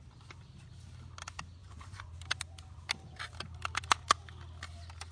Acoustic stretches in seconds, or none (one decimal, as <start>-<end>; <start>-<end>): 0.0-1.6; 2.1-5.1